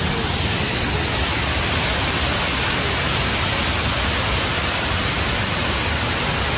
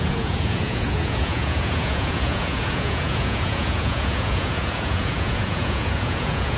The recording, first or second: first